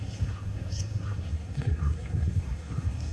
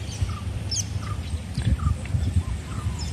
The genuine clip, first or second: second